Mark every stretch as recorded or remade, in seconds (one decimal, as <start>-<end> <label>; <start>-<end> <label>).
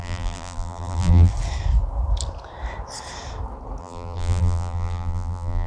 0.0-1.3 remade; 1.3-3.8 recorded; 3.8-5.7 remade